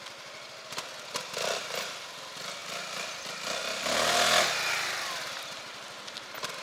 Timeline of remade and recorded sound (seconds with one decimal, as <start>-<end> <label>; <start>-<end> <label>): 0.0-6.6 recorded